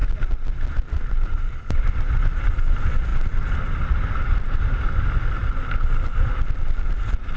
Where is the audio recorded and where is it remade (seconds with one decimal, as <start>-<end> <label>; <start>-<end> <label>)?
0.0-7.4 recorded